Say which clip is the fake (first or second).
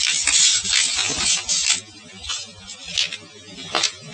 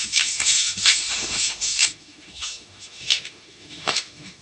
second